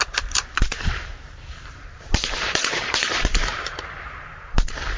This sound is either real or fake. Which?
fake